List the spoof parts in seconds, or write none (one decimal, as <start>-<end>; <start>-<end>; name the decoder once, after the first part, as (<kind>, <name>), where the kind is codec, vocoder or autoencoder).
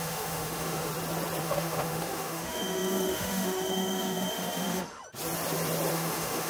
0.0-0.9 (autoencoder, DAC-VAE); 1.4-5.0; 5.9-6.5